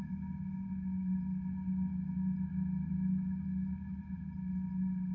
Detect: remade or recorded recorded